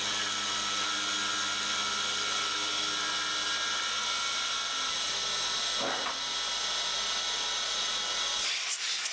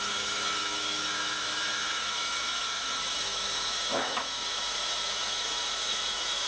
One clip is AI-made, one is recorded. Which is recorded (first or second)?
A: first